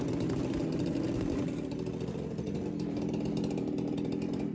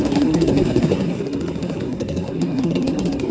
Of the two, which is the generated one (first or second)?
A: second